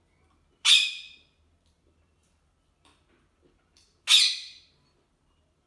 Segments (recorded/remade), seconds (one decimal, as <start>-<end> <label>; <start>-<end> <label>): 0.0-5.7 recorded